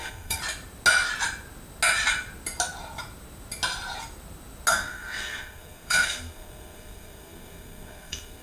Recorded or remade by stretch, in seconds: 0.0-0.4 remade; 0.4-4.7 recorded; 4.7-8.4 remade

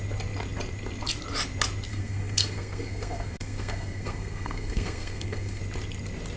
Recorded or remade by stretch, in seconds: 0.0-1.9 recorded; 1.9-5.6 remade; 5.6-6.4 recorded

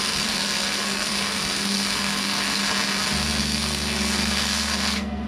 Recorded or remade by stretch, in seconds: 0.0-2.6 remade; 2.6-3.4 recorded; 3.4-5.3 remade

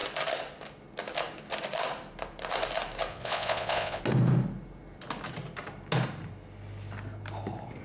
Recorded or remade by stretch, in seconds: 0.0-3.1 recorded; 3.1-4.0 remade; 4.0-7.8 recorded

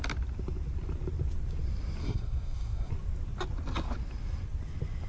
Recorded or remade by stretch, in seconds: 0.0-2.0 recorded; 2.0-2.9 remade; 2.9-5.1 recorded

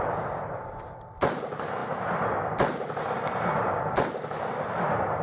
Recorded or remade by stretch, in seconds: 0.0-5.2 recorded